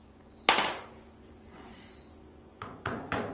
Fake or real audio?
fake